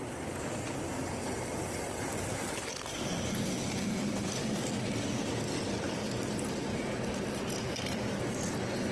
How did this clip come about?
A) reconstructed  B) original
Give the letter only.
B